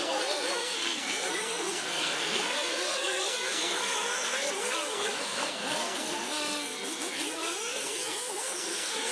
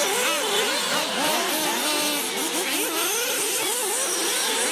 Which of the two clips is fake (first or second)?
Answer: first